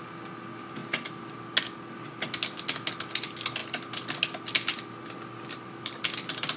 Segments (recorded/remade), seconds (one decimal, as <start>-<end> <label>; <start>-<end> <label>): 0.0-6.6 recorded